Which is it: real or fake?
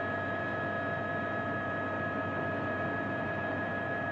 real